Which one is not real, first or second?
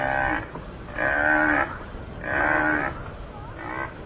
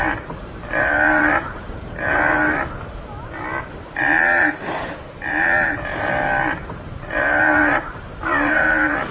second